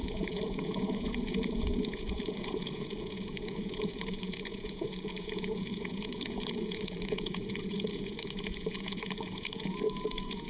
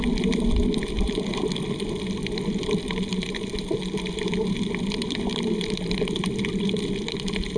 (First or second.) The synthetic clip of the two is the first